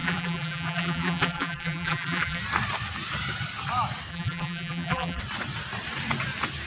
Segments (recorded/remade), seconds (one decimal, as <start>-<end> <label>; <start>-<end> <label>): 0.0-2.4 remade; 2.4-4.1 recorded; 4.1-5.2 remade; 5.2-6.7 recorded